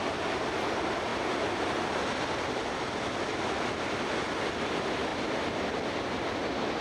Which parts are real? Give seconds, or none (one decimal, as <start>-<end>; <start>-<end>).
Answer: 0.0-6.8